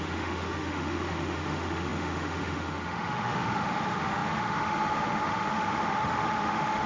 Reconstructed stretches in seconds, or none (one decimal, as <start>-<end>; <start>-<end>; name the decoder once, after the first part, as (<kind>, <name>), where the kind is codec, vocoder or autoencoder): 0.0-6.9 (autoencoder, DAC-VAE)

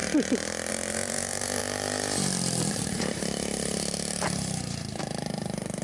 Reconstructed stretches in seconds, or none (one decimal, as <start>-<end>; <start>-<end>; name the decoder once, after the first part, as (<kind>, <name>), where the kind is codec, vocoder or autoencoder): 0.7-1.6 (vocoder, BigVGAN v2); 2.7-5.8

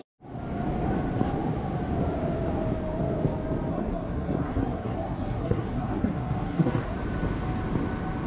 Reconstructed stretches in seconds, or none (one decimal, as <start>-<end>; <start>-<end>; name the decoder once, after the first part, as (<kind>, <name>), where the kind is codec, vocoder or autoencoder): 3.7-6.8 (codec, SNAC)

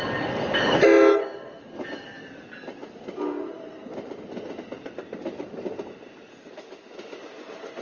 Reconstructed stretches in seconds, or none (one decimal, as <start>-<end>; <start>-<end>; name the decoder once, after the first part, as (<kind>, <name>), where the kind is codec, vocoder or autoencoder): none

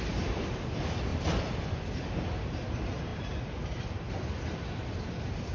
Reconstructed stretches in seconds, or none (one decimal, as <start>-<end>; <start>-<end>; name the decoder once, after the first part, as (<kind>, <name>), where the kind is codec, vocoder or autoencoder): 1.1-2.1 (vocoder, BigVGAN v2); 3.1-4.1